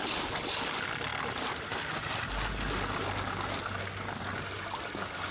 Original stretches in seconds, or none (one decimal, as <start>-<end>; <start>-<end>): 0.0-5.3